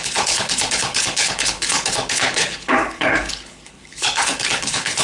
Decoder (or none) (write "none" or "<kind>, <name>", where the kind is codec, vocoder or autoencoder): codec, HILCodec